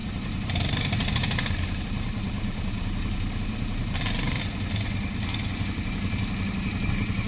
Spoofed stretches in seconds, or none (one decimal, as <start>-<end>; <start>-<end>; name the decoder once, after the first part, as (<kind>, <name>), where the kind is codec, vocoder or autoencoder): 0.0-4.4 (vocoder, BigVGAN v2)